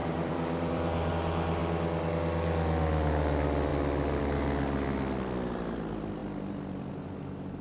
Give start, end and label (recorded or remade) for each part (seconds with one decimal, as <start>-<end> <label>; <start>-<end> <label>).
0.0-1.1 remade; 1.1-6.2 recorded; 6.2-6.9 remade; 6.9-7.6 recorded